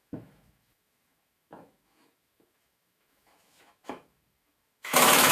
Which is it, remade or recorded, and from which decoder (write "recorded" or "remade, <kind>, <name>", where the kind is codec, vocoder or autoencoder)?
remade, autoencoder, DAC-VAE